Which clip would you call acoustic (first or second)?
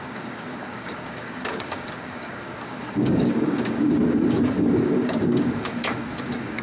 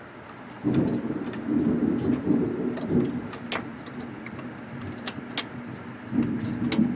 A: second